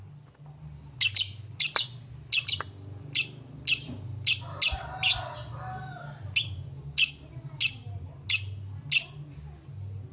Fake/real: real